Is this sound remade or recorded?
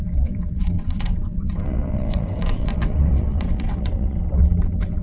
remade